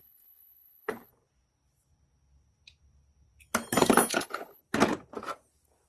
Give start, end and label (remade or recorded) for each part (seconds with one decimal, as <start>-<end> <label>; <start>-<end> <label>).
0.0-1.1 remade; 1.1-4.1 recorded; 4.1-4.6 remade; 4.6-5.9 recorded